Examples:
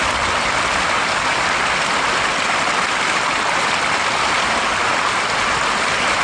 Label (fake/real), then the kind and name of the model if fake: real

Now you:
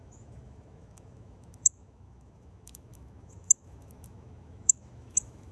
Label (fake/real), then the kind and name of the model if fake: fake, autoencoder, DAC-VAE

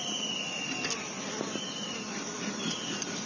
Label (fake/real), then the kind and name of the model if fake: real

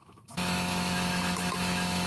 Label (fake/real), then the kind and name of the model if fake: fake, autoencoder, DAC-VAE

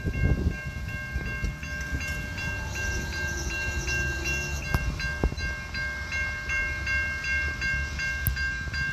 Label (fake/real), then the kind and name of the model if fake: real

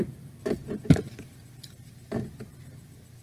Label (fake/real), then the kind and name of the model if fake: real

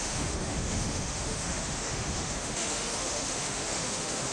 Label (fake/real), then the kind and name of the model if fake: fake, autoencoder, DAC-VAE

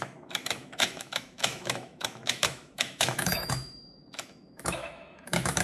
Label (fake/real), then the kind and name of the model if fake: fake, autoencoder, DAC-VAE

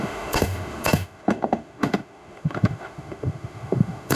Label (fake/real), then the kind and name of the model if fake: fake, autoencoder, DAC-VAE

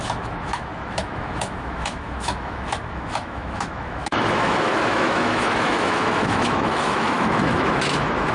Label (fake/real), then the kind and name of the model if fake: fake, autoencoder, DAC-VAE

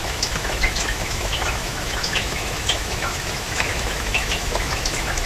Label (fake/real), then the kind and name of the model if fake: fake, autoencoder, DAC-VAE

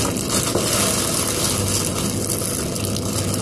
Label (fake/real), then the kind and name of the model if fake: real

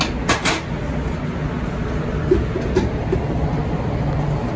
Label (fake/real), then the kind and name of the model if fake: real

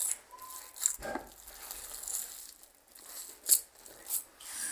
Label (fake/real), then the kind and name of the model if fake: real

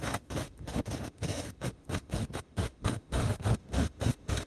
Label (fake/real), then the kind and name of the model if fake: fake, autoencoder, DAC-VAE